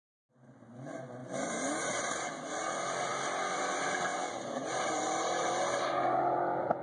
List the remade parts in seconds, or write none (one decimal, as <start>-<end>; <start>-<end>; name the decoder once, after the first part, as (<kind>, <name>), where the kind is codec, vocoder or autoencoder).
1.2-2.0 (vocoder, BigVGAN v2); 4.1-6.2